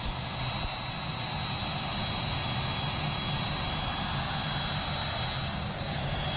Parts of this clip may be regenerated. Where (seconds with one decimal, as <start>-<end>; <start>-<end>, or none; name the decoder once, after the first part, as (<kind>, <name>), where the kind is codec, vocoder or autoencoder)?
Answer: none